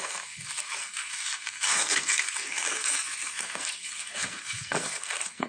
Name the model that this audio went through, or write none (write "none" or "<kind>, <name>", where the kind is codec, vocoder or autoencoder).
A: codec, SNAC